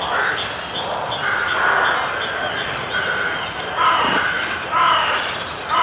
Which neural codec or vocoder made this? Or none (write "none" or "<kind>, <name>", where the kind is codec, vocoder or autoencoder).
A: none